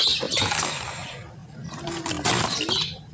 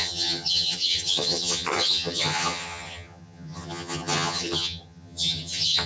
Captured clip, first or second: first